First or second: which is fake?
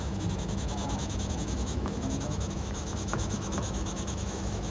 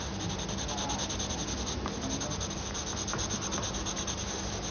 first